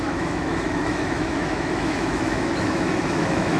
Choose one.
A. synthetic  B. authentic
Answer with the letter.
A